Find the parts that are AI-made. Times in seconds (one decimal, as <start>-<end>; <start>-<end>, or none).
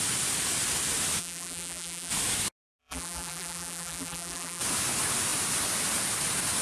1.2-2.1; 2.8-4.6